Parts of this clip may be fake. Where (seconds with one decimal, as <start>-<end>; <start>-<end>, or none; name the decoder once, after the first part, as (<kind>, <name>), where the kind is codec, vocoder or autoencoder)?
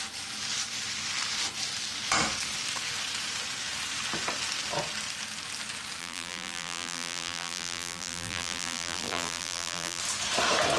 6.0-10.0 (vocoder, BigVGAN v2)